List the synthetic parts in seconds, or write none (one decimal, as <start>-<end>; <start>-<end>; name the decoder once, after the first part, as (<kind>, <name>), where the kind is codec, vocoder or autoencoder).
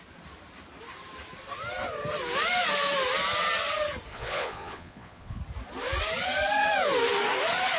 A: 4.1-5.4 (vocoder, Vocos)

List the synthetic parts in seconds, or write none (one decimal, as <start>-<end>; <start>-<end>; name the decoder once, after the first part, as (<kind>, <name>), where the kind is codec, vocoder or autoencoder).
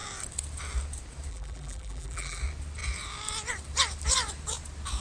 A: 1.3-2.4 (vocoder, BigVGAN v2)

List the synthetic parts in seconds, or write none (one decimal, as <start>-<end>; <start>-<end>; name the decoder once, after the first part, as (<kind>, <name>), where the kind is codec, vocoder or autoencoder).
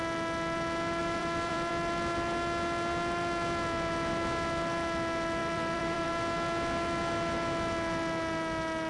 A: 1.0-1.7 (vocoder, BigVGAN v2); 5.4-6.1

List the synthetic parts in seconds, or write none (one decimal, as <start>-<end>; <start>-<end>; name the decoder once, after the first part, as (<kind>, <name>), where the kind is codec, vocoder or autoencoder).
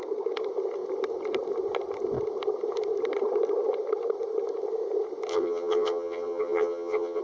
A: 5.3-7.2 (vocoder, HiFi-GAN)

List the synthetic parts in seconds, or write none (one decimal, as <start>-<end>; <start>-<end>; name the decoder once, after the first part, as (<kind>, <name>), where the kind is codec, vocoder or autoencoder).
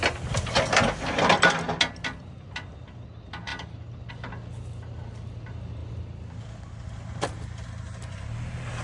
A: none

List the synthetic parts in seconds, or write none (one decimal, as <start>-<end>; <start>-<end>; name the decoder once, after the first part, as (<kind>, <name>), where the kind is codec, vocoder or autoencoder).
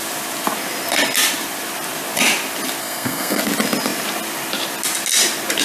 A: 2.8-3.4 (codec, SNAC)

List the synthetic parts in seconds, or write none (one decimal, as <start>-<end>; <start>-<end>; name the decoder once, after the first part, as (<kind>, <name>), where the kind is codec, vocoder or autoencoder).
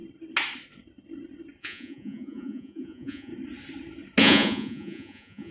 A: 1.6-3.3 (vocoder, Vocos); 4.2-5.5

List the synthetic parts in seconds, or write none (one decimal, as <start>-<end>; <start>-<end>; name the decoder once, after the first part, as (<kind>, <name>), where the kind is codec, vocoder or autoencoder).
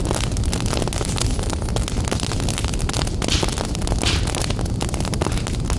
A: none